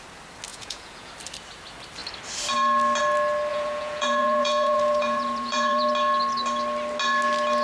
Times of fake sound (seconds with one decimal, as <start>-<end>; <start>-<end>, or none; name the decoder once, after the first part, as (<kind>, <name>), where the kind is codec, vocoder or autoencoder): 0.5-1.1 (vocoder, Vocos); 3.5-5.9